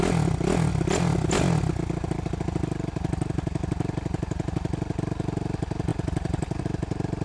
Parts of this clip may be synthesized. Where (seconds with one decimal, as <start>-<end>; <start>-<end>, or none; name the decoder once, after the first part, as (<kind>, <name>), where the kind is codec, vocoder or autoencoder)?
0.7-1.3 (vocoder, BigVGAN v2); 5.9-6.6